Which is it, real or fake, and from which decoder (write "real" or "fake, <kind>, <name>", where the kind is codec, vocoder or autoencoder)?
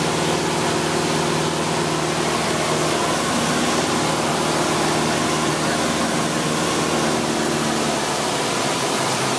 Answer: real